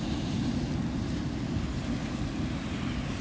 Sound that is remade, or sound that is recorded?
recorded